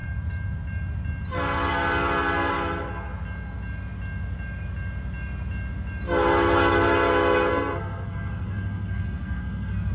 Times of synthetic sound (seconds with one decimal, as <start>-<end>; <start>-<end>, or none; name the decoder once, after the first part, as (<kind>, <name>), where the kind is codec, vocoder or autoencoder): 7.5-9.9 (codec, SNAC)